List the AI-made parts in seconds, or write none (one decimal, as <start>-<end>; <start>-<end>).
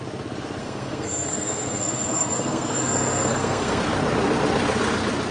0.6-3.8